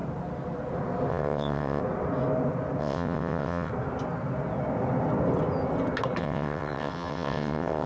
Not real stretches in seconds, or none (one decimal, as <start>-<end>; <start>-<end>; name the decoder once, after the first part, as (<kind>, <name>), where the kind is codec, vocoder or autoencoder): 1.1-1.8 (vocoder, WaveNeXt); 2.8-3.7; 6.2-7.9